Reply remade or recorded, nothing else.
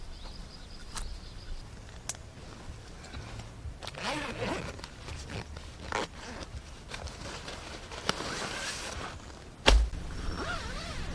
recorded